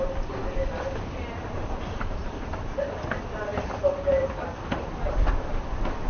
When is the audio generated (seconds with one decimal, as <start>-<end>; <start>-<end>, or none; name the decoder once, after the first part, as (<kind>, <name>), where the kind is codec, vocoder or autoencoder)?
none